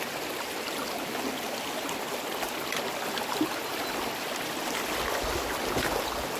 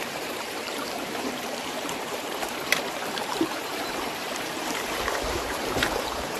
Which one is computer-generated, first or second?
second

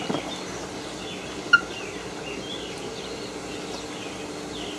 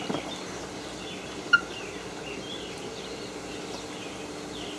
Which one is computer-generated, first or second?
second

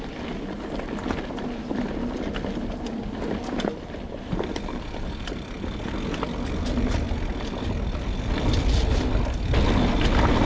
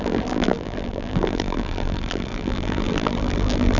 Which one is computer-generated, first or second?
second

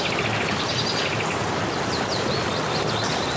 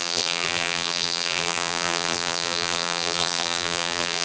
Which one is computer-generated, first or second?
second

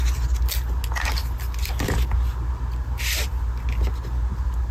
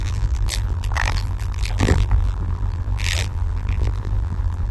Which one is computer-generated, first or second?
second